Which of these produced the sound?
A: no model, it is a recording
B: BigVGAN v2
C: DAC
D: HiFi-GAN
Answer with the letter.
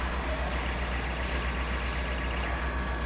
A